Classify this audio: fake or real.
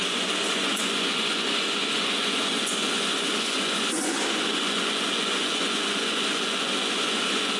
fake